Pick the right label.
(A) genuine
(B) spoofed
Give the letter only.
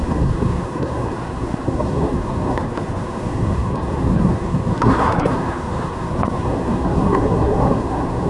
B